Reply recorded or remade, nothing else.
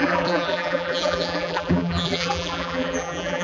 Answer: remade